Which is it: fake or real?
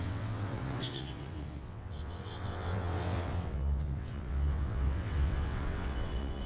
fake